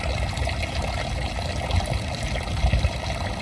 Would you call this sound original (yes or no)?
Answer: yes